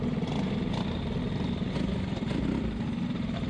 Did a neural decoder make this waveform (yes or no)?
no